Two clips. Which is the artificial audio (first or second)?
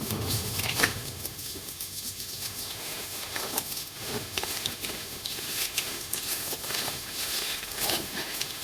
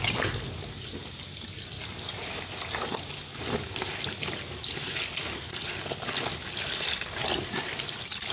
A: first